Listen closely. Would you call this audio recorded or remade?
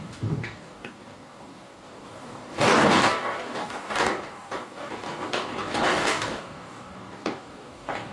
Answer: remade